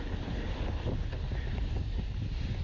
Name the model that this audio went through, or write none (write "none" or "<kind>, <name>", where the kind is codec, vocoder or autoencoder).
none